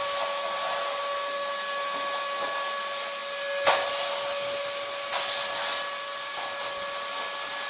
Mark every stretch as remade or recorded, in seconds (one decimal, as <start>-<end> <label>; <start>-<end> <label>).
0.0-7.7 recorded